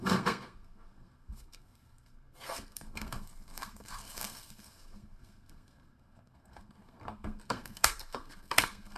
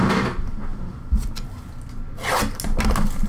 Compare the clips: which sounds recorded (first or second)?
second